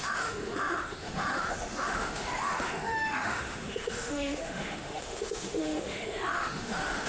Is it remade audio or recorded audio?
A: remade